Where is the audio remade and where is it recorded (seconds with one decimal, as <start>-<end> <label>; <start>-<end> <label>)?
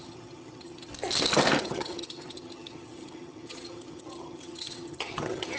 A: 0.0-0.9 remade; 0.9-1.6 recorded; 1.6-5.6 remade